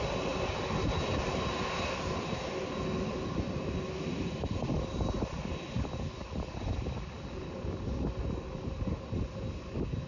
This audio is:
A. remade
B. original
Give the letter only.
B